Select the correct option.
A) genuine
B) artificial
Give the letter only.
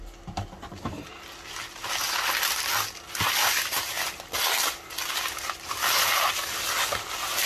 A